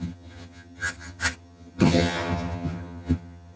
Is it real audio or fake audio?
fake